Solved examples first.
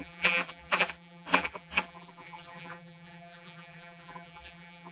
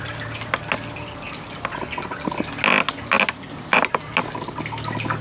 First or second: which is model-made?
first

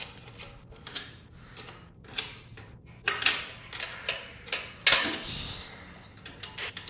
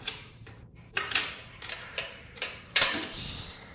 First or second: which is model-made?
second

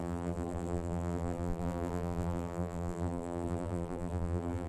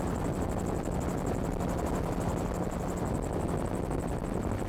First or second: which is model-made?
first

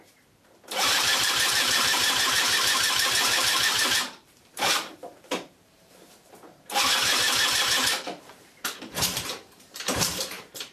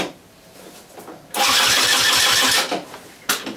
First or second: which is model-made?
first